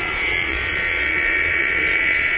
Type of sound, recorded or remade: remade